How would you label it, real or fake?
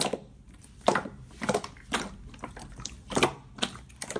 real